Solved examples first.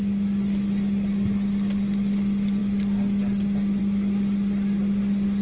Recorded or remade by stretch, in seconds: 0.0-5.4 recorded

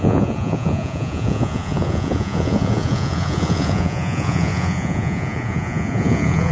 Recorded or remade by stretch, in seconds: 0.0-6.5 remade

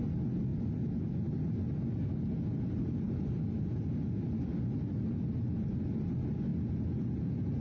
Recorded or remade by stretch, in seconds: 0.0-7.6 recorded

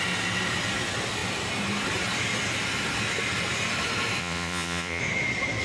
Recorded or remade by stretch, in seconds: 0.0-4.2 recorded; 4.2-5.0 remade; 5.0-5.6 recorded

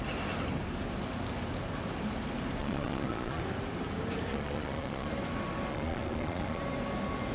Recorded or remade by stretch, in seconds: 0.0-2.6 recorded; 2.6-3.4 remade; 3.4-4.3 recorded; 4.3-5.1 remade; 5.1-5.7 recorded; 5.7-6.6 remade; 6.6-7.3 recorded

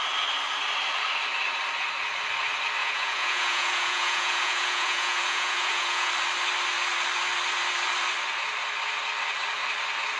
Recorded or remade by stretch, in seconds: 0.0-2.8 recorded; 2.8-6.1 remade; 6.1-10.2 recorded